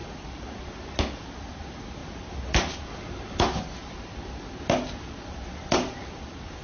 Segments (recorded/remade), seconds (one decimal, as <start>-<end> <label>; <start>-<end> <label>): 0.0-6.6 recorded